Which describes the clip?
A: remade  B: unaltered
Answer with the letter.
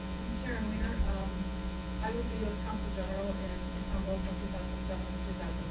A